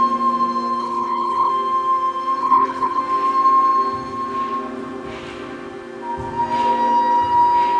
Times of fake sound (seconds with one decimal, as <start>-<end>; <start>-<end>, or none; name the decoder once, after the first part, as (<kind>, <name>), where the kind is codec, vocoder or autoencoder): 0.8-1.5 (codec, HILCodec); 2.4-3.0